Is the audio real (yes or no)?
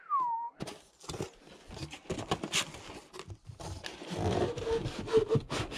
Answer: yes